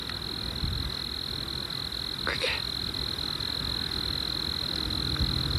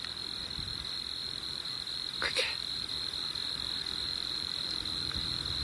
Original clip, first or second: first